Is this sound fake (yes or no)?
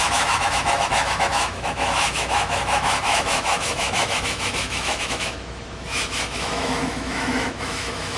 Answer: yes